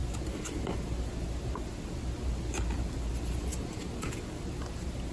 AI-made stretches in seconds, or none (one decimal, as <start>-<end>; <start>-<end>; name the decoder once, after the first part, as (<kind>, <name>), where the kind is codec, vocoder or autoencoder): none